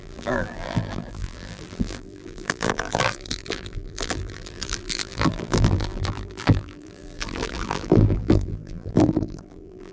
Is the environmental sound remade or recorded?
remade